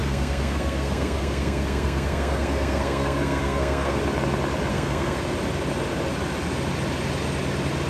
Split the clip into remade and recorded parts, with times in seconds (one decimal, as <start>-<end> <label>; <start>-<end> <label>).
0.0-4.0 remade; 4.0-4.7 recorded; 4.7-5.2 remade; 5.2-7.9 recorded